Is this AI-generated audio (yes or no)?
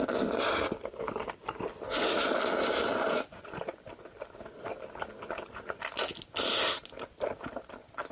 no